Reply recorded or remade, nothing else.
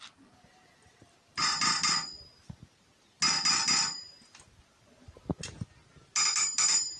recorded